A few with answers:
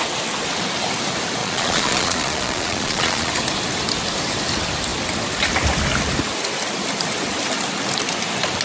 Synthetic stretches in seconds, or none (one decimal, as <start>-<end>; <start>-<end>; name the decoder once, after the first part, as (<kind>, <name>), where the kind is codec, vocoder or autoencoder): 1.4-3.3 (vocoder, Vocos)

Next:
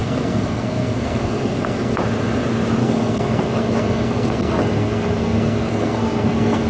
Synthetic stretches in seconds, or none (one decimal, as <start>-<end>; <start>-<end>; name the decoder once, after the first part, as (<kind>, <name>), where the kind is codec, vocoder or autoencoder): 0.0-2.0 (codec, SNAC); 2.8-6.7

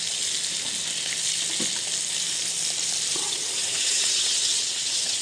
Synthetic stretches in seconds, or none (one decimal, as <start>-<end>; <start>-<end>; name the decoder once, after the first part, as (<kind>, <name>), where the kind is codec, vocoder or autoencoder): 3.1-5.2 (vocoder, WaveNeXt)

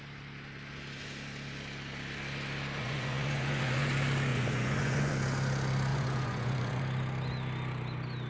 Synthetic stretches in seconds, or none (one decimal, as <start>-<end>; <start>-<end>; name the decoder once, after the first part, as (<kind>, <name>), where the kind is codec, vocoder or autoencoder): 2.8-3.9 (vocoder, Vocos); 4.3-5.1; 5.9-6.8

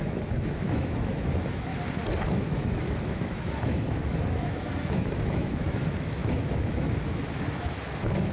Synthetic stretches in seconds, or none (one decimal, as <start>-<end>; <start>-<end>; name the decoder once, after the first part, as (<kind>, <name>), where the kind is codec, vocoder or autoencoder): 0.0-1.7 (autoencoder, DAC-VAE); 2.3-8.3

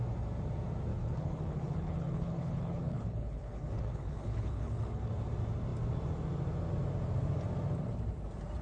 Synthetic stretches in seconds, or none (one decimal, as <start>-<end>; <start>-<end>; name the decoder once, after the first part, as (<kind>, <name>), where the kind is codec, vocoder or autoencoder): 0.9-5.1 (codec, HILCodec)